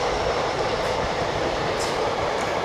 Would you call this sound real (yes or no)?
no